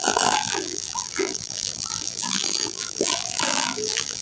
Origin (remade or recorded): remade